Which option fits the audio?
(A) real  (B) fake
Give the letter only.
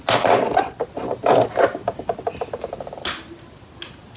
A